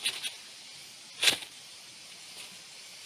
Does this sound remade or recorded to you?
recorded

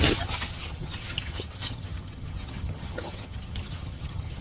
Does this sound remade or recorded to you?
remade